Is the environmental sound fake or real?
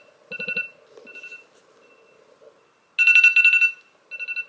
real